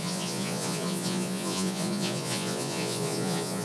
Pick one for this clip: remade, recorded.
remade